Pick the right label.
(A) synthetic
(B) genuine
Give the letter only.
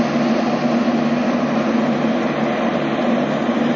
B